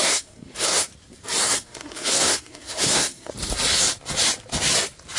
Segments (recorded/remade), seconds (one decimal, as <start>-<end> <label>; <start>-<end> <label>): 0.0-0.9 remade; 0.9-1.4 recorded; 1.4-3.3 remade; 3.3-5.2 recorded